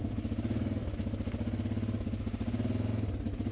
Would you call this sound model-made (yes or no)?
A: no